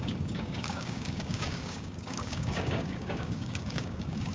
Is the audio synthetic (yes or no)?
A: yes